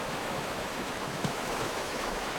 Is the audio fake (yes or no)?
yes